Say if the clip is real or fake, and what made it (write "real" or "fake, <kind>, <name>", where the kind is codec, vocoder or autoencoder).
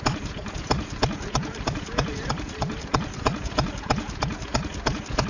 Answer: fake, vocoder, Vocos